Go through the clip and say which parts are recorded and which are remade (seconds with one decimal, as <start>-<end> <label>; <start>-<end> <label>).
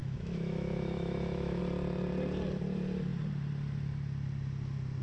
0.0-1.6 remade; 1.6-5.0 recorded